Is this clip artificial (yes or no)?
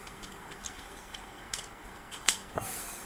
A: yes